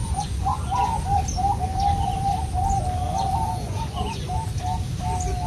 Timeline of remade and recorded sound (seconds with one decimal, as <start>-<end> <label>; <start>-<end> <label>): 0.0-1.0 remade; 1.0-3.5 recorded; 3.5-4.3 remade; 4.3-5.5 recorded